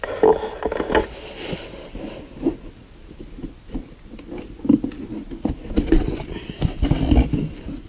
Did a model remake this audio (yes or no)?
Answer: no